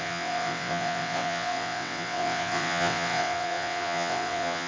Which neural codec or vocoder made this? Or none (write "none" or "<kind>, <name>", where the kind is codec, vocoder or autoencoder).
vocoder, WaveNeXt